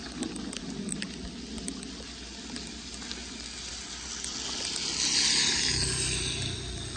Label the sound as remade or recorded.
recorded